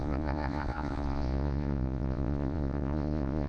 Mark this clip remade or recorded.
remade